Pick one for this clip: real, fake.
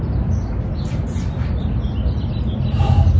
real